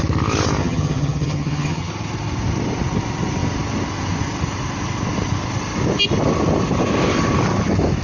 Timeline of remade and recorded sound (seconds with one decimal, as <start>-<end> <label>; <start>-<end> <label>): 0.0-0.6 recorded; 0.6-1.9 remade; 1.9-8.0 recorded